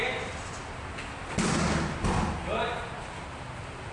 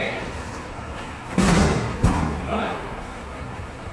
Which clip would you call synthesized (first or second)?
second